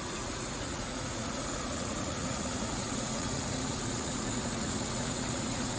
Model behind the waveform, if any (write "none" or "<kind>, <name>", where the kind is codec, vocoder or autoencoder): vocoder, Vocos